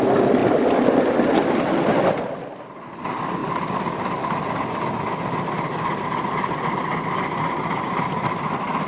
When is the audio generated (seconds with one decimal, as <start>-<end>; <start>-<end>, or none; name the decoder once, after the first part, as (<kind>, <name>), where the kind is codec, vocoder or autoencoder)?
none